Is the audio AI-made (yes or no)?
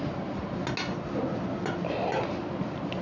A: no